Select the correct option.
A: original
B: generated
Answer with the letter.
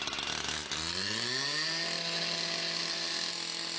A